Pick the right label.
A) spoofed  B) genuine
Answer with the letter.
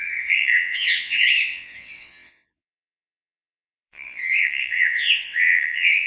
A